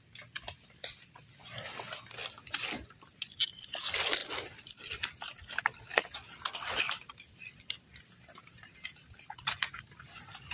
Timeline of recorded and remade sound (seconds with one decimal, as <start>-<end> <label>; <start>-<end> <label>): 0.0-8.4 recorded; 8.4-9.6 remade; 9.6-10.5 recorded